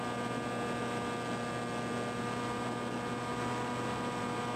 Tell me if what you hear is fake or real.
real